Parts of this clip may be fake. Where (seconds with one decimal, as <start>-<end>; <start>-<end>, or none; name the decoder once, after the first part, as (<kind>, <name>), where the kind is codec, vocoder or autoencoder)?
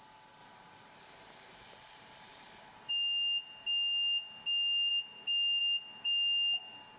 0.4-2.9 (vocoder, BigVGAN v2)